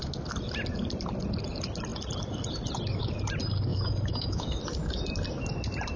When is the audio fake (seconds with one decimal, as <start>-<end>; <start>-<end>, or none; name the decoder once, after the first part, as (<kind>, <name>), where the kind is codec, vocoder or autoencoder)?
3.7-4.6 (autoencoder, DAC-VAE)